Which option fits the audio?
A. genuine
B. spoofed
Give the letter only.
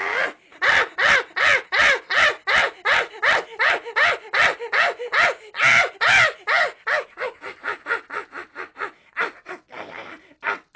A